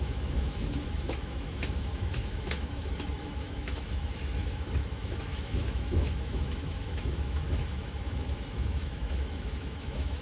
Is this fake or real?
fake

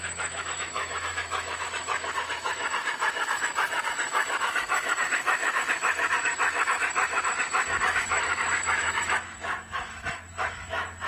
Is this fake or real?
fake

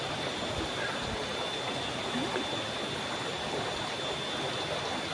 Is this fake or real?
real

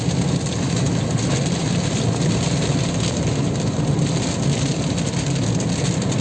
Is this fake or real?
real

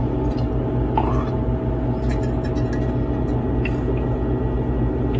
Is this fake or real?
real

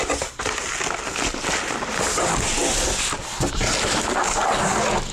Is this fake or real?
real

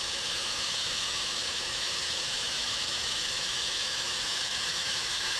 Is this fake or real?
fake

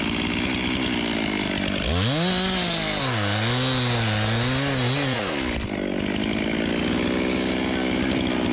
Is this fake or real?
real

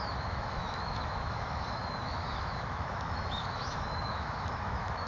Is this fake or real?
fake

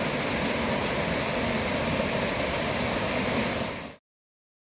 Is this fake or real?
real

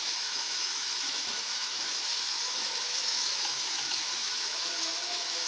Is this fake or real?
fake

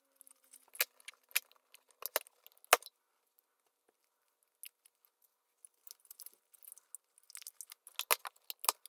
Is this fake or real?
real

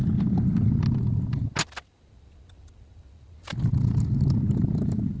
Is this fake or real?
real